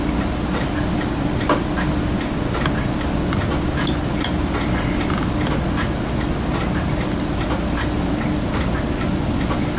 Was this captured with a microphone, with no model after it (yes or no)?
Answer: yes